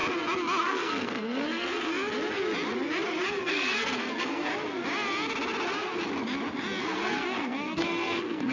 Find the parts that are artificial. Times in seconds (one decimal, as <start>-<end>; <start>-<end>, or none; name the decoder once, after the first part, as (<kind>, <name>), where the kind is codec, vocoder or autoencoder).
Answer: 0.6-1.9 (codec, SNAC); 3.4-4.5; 6.8-8.5